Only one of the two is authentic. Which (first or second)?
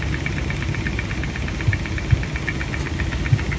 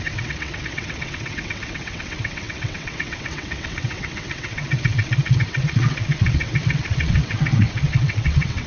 first